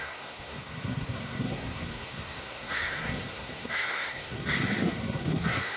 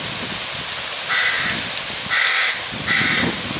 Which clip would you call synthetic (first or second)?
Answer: first